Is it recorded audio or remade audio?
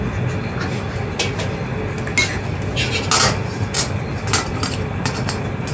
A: recorded